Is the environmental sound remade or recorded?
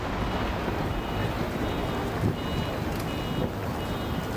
recorded